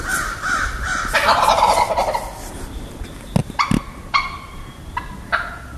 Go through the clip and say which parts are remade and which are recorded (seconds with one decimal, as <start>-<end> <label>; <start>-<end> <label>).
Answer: 0.0-5.8 recorded